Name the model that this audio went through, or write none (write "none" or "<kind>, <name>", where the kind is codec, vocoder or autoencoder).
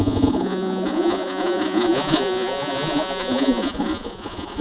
vocoder, Vocos